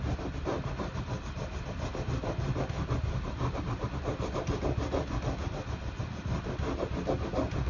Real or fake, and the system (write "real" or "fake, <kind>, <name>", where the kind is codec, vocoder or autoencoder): real